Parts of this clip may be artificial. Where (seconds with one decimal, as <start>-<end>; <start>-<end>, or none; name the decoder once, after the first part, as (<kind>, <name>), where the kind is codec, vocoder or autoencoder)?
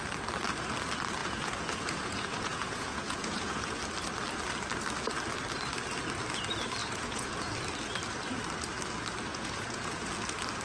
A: 1.2-3.8 (vocoder, Vocos); 6.8-7.4; 9.3-10.1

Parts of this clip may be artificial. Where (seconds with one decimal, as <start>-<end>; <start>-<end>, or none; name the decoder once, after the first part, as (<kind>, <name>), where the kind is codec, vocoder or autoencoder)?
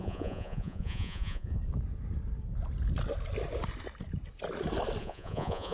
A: 0.0-1.6 (vocoder, Vocos); 5.0-5.7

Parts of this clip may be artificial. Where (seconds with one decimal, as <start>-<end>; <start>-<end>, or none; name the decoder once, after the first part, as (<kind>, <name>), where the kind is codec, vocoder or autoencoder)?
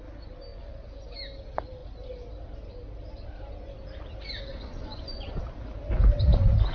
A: 0.5-1.1 (vocoder, Vocos); 4.5-5.4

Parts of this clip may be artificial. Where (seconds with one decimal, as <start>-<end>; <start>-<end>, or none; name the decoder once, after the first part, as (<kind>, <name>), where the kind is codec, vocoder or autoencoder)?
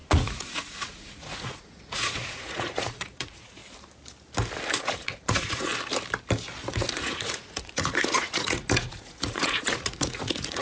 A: 0.0-3.6 (vocoder, Vocos); 4.7-5.7; 6.7-10.6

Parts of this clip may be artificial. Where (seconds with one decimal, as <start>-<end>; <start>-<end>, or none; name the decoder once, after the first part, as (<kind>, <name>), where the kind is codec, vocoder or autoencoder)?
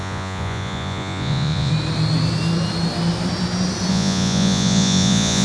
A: 0.0-1.7 (vocoder, Vocos); 3.9-5.4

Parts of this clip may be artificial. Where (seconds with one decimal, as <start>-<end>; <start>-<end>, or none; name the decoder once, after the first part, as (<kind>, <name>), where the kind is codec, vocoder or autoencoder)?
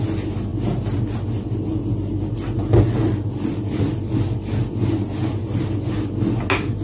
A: none